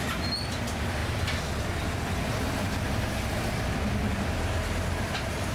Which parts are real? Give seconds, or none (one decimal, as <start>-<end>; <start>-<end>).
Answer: 0.0-5.5